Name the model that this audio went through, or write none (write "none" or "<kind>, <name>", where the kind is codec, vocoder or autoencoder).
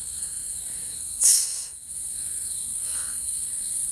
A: codec, SNAC